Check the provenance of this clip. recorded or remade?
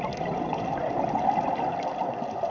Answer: recorded